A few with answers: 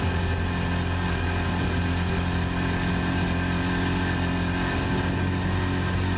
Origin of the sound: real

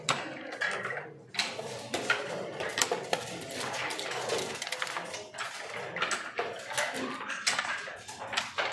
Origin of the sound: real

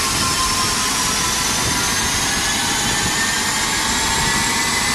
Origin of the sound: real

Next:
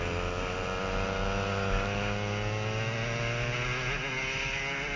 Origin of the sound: real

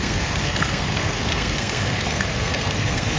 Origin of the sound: fake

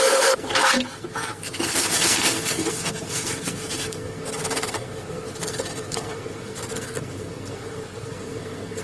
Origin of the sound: fake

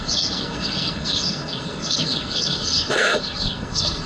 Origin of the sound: fake